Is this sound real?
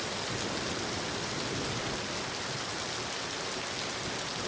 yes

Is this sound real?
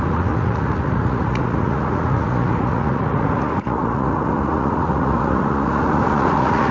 no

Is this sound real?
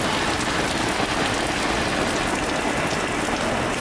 yes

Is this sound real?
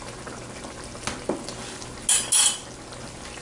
yes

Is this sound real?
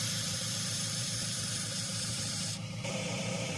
no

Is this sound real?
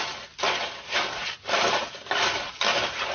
yes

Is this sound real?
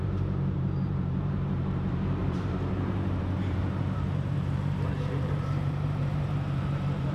no